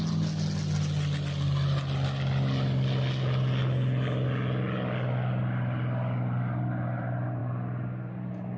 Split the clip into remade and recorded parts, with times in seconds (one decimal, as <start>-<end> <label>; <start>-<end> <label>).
0.0-8.6 recorded